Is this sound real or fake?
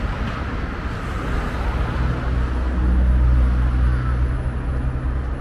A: real